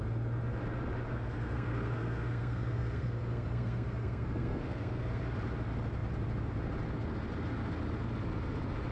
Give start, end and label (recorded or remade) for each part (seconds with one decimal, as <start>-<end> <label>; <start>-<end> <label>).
0.0-1.1 recorded; 1.1-5.2 remade; 5.2-8.9 recorded